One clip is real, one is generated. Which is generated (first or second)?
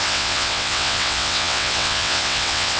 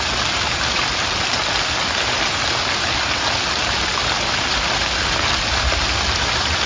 first